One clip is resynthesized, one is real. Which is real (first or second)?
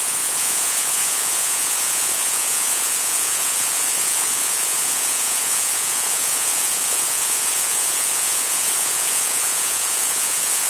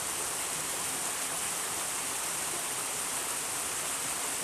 second